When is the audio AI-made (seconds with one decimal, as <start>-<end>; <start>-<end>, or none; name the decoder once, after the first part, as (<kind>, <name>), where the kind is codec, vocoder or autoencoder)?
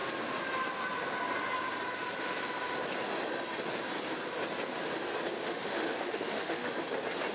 5.4-6.7 (autoencoder, DAC-VAE)